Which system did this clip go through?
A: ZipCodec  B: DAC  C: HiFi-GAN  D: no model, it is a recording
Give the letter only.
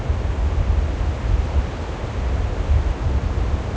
D